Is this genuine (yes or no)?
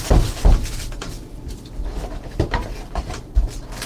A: yes